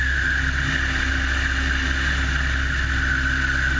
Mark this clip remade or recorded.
recorded